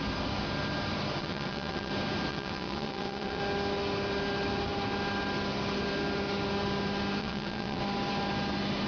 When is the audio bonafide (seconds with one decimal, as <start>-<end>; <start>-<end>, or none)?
0.0-1.2; 1.9-2.3; 3.4-7.2; 7.8-8.9